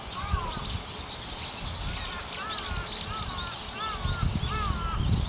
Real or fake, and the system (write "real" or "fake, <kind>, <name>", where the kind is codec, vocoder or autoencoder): real